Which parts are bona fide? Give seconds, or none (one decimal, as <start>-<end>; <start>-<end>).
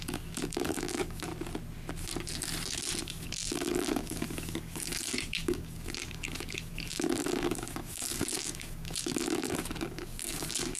1.3-3.0